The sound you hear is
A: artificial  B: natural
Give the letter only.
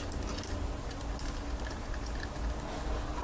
B